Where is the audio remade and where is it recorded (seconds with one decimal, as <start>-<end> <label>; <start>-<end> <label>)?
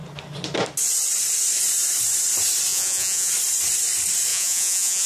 0.0-2.7 recorded; 2.7-3.3 remade; 3.3-4.3 recorded; 4.3-5.1 remade